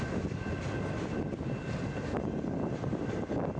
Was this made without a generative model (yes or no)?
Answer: yes